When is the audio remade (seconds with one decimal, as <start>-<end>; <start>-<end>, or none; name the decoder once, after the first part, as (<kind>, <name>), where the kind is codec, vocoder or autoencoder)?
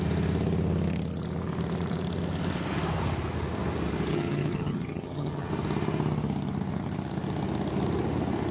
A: 4.1-5.5 (vocoder, HiFi-GAN)